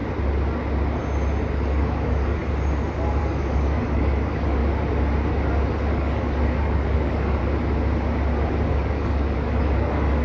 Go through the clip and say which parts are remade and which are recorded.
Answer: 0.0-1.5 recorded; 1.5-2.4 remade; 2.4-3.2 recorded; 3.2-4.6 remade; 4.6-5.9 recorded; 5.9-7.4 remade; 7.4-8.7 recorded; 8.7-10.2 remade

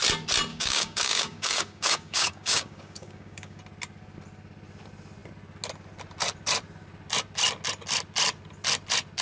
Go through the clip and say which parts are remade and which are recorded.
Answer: 0.0-0.5 recorded; 0.5-3.6 remade; 3.6-9.2 recorded

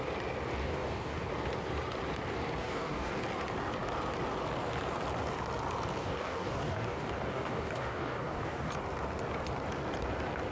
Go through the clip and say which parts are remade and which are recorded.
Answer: 0.0-0.6 recorded; 0.6-1.3 remade; 1.3-2.6 recorded; 2.6-3.2 remade; 3.2-6.0 recorded; 6.0-8.7 remade; 8.7-10.5 recorded